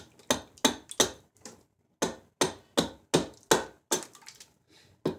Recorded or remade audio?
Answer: recorded